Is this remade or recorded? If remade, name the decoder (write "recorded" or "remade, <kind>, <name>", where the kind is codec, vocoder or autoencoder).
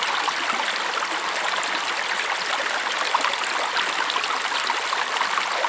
recorded